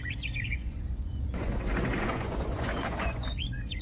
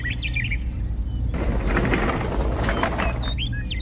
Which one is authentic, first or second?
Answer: second